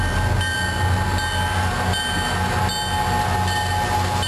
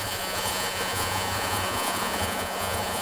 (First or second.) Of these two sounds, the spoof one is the second